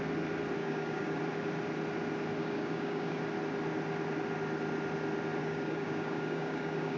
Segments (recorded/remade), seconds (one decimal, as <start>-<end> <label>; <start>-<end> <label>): 0.0-0.6 recorded; 0.6-1.2 remade; 1.2-2.4 recorded; 2.4-3.2 remade; 3.2-5.4 recorded; 5.4-7.0 remade

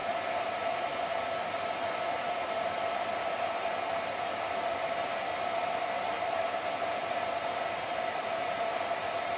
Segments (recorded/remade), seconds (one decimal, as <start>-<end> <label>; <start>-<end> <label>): 0.0-9.4 recorded

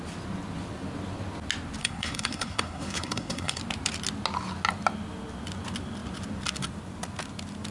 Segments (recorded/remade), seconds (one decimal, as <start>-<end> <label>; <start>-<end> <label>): 0.0-1.8 recorded; 1.8-3.6 remade; 3.6-7.7 recorded

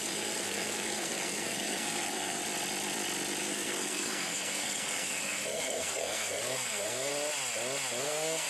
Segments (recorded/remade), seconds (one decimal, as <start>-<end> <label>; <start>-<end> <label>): 0.0-2.4 remade; 2.4-3.4 recorded; 3.4-7.1 remade; 7.1-8.0 recorded; 8.0-8.5 remade

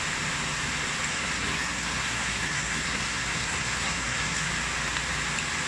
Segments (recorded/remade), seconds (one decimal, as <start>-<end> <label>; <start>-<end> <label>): 0.0-1.1 recorded; 1.1-4.5 remade; 4.5-5.7 recorded

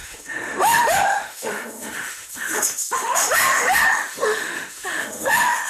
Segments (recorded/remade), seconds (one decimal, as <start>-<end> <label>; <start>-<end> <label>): 0.0-5.7 remade

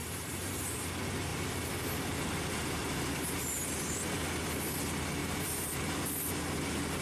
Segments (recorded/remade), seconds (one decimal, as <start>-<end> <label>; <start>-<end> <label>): 0.0-0.9 remade; 0.9-1.3 recorded; 1.3-1.9 remade; 1.9-2.8 recorded; 2.8-3.6 remade; 3.6-5.2 recorded; 5.2-5.7 remade; 5.7-7.0 recorded